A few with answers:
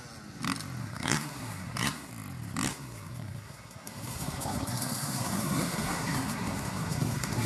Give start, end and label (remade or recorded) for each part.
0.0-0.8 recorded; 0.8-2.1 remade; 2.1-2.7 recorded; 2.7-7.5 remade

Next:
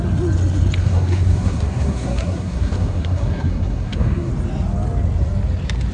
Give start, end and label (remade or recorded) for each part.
0.0-0.8 recorded; 0.8-4.3 remade; 4.3-5.9 recorded

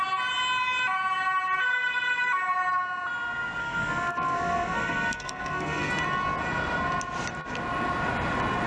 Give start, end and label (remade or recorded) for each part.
0.0-3.6 recorded; 3.6-5.9 remade; 5.9-8.7 recorded

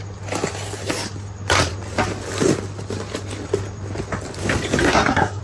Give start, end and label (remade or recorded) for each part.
0.0-4.8 recorded; 4.8-5.4 remade

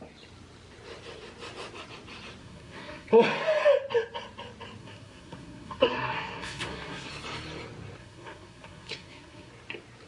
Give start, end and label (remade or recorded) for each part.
0.0-2.4 recorded; 2.4-3.1 remade; 3.1-4.8 recorded; 4.8-7.1 remade; 7.1-8.0 recorded; 8.0-9.5 remade; 9.5-10.1 recorded

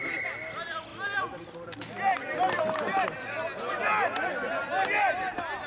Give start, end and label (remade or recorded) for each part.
0.0-5.7 recorded

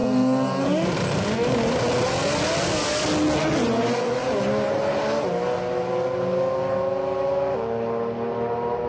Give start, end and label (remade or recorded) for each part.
0.0-8.9 recorded

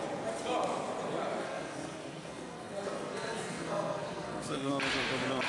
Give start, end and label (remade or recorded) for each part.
0.0-1.4 recorded; 1.4-4.7 remade; 4.7-5.5 recorded